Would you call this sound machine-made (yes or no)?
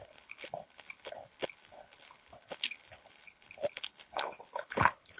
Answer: yes